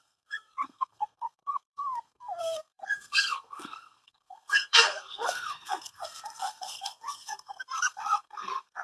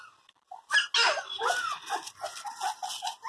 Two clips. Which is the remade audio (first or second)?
first